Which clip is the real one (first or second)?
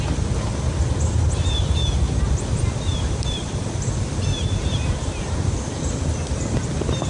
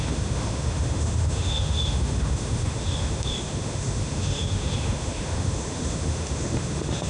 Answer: first